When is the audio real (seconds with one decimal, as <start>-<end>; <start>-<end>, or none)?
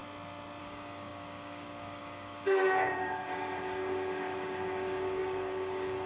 0.0-0.6